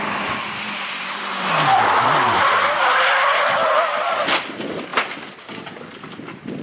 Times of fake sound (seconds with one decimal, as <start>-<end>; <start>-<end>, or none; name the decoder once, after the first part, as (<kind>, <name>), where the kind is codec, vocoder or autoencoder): 0.0-4.9 (vocoder, BigVGAN v2); 5.5-6.6